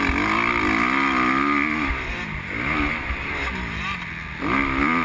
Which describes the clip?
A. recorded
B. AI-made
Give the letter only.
A